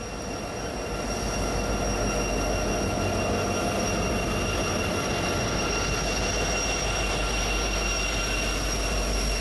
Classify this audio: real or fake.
real